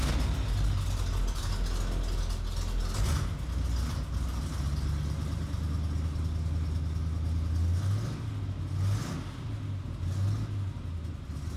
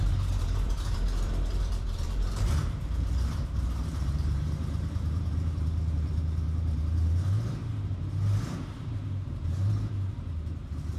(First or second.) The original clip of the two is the first